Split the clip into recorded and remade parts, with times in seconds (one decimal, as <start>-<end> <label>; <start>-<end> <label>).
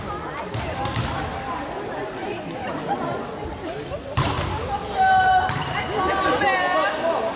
0.0-7.4 recorded